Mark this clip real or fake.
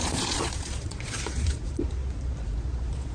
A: fake